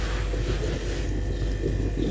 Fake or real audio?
real